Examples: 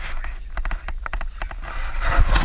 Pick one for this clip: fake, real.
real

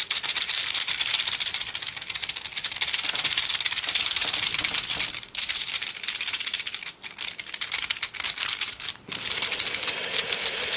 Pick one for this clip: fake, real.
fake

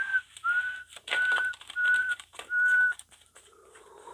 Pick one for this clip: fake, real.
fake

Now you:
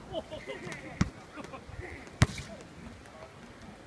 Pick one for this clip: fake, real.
real